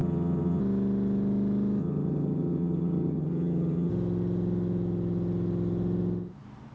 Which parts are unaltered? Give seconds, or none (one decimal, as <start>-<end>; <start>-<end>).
0.6-1.8; 3.9-6.7